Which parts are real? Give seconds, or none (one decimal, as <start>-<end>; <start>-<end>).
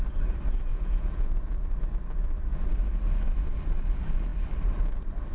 0.0-0.7; 1.4-5.3